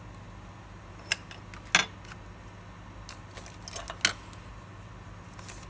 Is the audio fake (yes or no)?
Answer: no